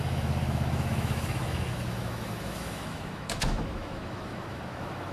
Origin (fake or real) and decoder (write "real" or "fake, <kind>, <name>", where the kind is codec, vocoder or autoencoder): fake, autoencoder, DAC-VAE